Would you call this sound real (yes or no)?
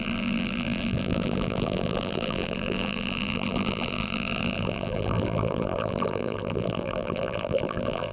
no